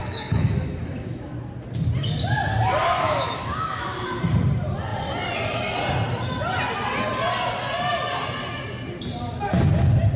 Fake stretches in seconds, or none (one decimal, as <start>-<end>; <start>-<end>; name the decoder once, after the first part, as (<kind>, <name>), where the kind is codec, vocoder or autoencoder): 0.0-1.3 (autoencoder, DAC-VAE); 2.8-4.2